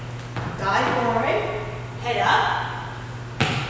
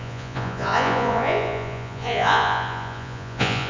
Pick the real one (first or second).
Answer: first